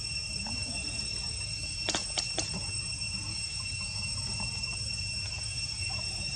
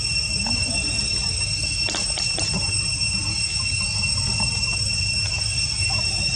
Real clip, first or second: second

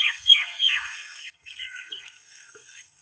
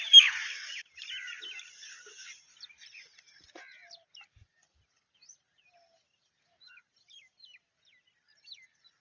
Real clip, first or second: second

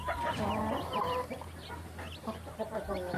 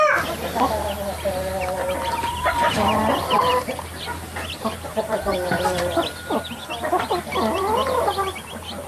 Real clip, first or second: first